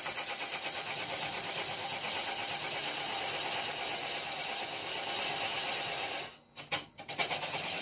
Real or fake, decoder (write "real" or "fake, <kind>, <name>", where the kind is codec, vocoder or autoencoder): real